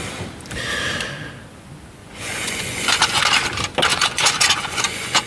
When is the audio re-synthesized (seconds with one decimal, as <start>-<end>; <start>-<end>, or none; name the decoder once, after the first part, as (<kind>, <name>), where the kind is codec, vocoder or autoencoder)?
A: 2.0-3.2 (vocoder, Vocos); 3.9-5.3